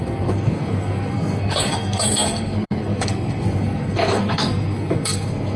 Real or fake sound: fake